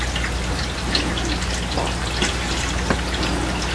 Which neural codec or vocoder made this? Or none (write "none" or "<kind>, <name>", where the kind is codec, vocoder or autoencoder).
none